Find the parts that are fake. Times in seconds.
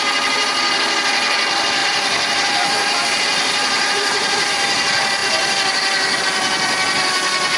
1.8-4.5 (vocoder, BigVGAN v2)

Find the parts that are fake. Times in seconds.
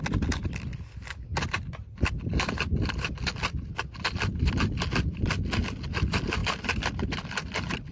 none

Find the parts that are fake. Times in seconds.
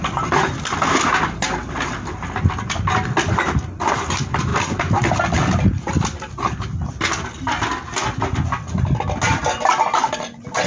1.6-2.1 (vocoder, BigVGAN v2); 4.5-5.9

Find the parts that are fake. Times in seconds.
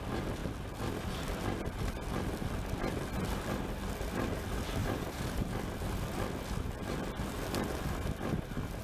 4.8-5.5 (vocoder, BigVGAN v2)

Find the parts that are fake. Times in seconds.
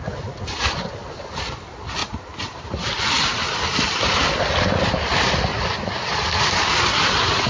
2.0-4.0 (vocoder, BigVGAN v2); 5.5-7.5